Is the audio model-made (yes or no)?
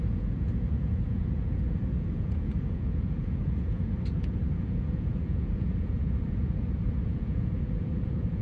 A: yes